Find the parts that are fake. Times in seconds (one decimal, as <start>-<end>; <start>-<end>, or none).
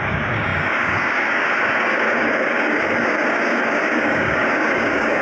0.0-5.2